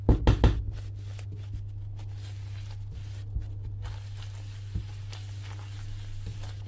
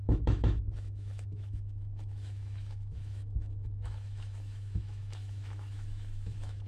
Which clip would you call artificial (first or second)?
second